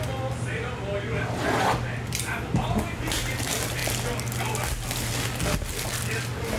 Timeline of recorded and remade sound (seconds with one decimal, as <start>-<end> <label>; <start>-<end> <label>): 0.0-6.6 recorded